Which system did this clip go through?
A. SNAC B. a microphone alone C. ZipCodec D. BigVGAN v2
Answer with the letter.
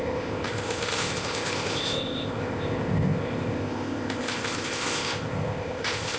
C